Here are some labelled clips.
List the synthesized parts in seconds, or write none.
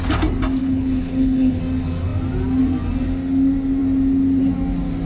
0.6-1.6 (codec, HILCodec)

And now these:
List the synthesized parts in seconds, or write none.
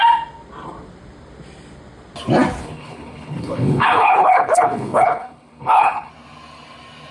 2.6-6.1 (codec, HILCodec)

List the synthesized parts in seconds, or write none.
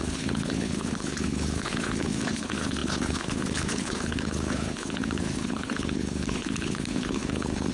0.0-7.7 (codec, HILCodec)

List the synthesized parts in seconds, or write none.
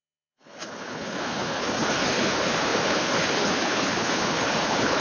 0.0-5.0 (codec, HILCodec)